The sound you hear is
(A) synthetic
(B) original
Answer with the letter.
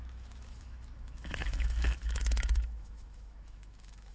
A